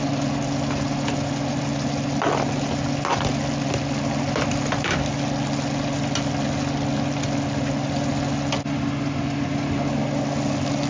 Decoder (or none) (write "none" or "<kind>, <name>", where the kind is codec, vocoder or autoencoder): none